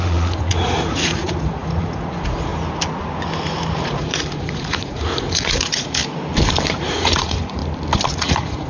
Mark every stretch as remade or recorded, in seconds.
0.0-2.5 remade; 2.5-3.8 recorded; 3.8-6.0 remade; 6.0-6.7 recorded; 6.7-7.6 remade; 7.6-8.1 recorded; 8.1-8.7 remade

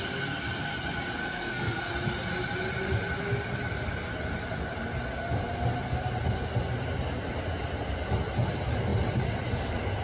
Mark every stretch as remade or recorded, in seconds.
0.0-1.2 recorded; 1.2-1.9 remade; 1.9-10.0 recorded

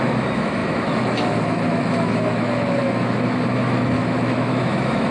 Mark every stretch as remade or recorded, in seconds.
0.0-5.1 remade

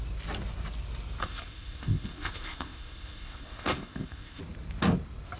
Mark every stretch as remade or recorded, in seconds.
0.0-1.2 recorded; 1.2-4.4 remade; 4.4-5.4 recorded

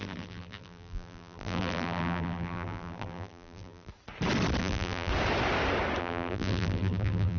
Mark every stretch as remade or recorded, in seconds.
0.0-3.9 remade; 3.9-4.6 recorded; 4.6-5.1 remade; 5.1-6.0 recorded; 6.0-7.4 remade

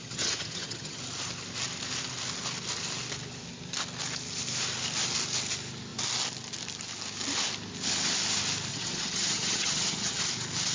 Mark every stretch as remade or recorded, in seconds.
0.0-1.0 remade; 1.0-8.7 recorded; 8.7-10.2 remade; 10.2-10.7 recorded

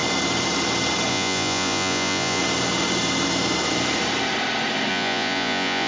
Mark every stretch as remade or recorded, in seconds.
0.0-1.1 recorded; 1.1-2.4 remade; 2.4-4.9 recorded; 4.9-5.9 remade

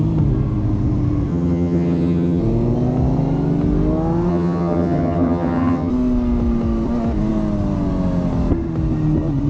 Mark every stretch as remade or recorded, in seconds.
0.0-1.3 recorded; 1.3-2.4 remade; 2.4-4.3 recorded; 4.3-5.9 remade; 5.9-9.5 recorded